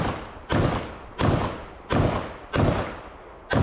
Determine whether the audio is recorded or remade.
recorded